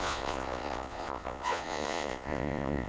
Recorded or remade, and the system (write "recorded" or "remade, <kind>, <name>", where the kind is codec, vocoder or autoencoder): remade, vocoder, Vocos